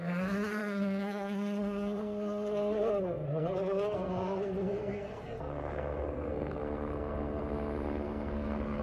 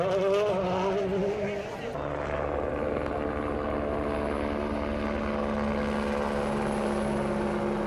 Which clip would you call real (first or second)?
second